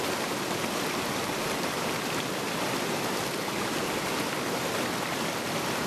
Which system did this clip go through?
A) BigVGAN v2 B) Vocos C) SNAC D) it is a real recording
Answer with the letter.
D